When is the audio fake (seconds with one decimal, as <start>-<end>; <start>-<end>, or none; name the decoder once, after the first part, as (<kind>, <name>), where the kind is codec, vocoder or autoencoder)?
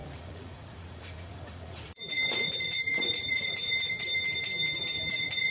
0.0-4.0 (vocoder, Vocos); 5.1-5.5